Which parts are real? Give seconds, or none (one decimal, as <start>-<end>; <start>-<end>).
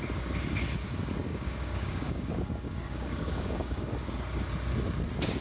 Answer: 0.0-1.3; 4.0-5.4